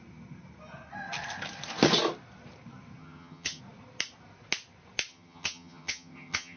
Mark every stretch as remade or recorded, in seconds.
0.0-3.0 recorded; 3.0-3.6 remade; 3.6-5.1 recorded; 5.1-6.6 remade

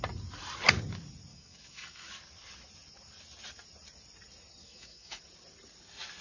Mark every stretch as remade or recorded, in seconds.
0.0-1.3 recorded; 1.3-2.1 remade; 2.1-4.6 recorded; 4.6-5.2 remade; 5.2-6.2 recorded

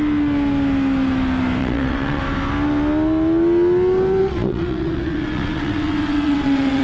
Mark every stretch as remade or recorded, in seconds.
0.0-1.6 recorded; 1.6-2.2 remade; 2.2-4.2 recorded; 4.2-6.8 remade

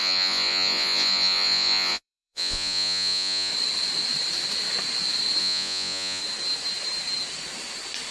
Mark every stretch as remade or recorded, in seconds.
0.0-3.5 remade; 3.5-5.4 recorded; 5.4-6.2 remade; 6.2-8.1 recorded

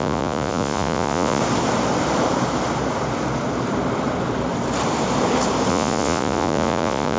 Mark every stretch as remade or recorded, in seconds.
0.0-1.4 remade; 1.4-5.7 recorded; 5.7-7.2 remade